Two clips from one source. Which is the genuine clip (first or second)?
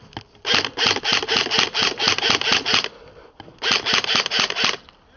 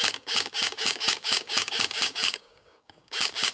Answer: first